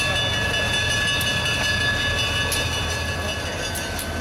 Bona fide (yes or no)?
yes